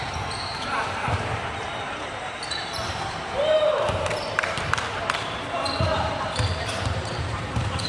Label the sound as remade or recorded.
remade